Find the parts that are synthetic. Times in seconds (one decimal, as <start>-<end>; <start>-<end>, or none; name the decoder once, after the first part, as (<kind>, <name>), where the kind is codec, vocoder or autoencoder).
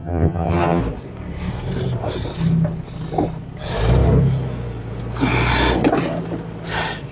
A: 0.0-0.8 (vocoder, HiFi-GAN)